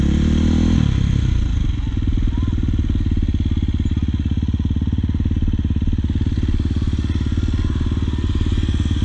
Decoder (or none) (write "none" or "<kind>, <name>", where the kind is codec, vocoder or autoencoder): none